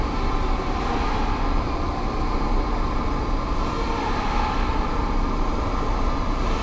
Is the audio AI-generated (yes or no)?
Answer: no